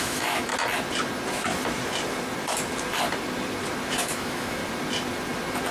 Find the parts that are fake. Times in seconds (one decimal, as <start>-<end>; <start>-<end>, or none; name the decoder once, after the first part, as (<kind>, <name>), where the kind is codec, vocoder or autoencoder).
0.0-0.5 (autoencoder, DAC-VAE); 3.9-4.6